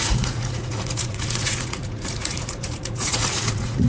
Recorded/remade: remade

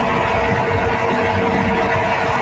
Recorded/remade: recorded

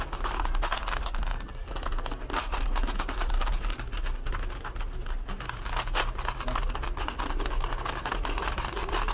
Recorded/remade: recorded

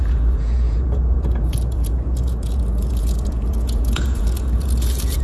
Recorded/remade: remade